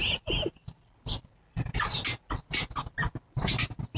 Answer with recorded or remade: recorded